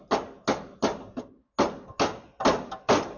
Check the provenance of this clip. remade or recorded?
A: recorded